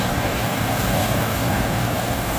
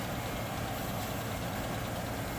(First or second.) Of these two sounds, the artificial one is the first